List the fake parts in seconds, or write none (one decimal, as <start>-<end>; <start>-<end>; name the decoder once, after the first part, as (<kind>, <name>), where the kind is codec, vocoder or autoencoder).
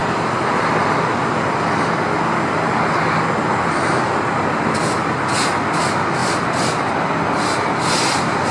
0.0-0.8 (vocoder, BigVGAN v2); 6.2-6.9